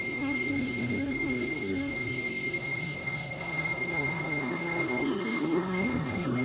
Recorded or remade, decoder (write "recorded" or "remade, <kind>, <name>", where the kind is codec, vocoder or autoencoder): remade, codec, SNAC